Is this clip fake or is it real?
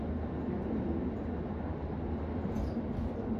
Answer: real